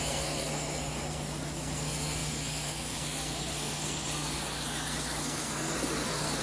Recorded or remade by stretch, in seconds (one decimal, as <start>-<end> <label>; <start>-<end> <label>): 0.0-6.4 remade